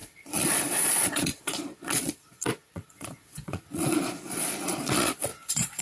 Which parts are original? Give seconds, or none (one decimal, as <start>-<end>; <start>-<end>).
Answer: none